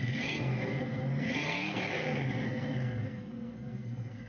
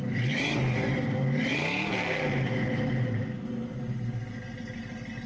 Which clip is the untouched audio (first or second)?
second